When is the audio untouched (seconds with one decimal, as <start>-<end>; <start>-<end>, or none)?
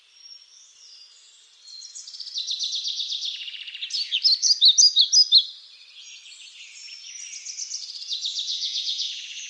0.0-8.5